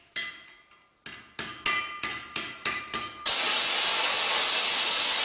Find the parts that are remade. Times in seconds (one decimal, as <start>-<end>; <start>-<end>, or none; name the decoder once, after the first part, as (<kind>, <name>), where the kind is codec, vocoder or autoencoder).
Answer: 2.1-4.6 (vocoder, BigVGAN v2)